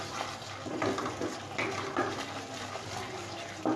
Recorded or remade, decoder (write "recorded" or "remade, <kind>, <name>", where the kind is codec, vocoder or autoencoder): recorded